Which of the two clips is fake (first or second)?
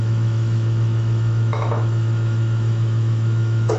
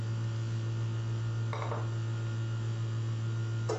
first